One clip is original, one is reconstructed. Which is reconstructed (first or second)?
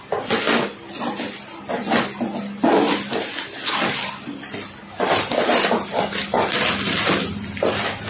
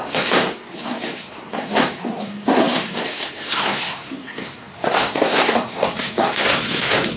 second